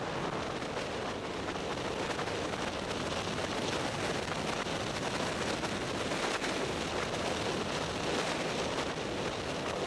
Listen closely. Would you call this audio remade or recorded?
recorded